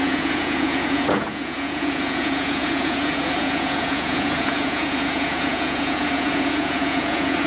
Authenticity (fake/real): fake